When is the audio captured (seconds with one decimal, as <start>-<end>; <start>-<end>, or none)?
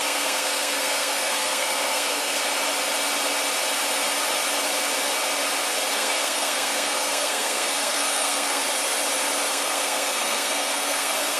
2.4-5.9; 8.6-9.5